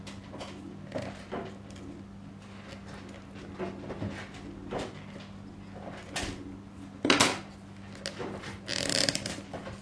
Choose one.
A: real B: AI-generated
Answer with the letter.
A